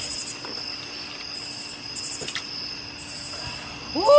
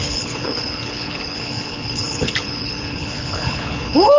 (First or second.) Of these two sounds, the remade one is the second